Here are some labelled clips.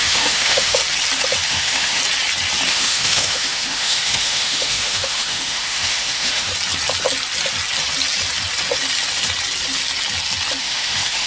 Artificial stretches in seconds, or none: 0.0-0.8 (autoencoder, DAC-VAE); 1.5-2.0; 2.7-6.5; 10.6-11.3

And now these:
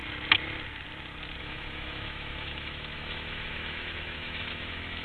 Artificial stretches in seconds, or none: 1.4-5.0 (autoencoder, DAC-VAE)